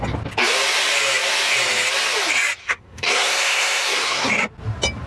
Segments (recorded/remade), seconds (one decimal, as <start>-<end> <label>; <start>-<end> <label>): 0.0-2.6 recorded; 2.6-4.3 remade; 4.3-5.1 recorded